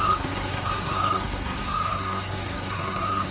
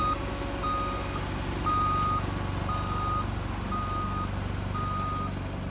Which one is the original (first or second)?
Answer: second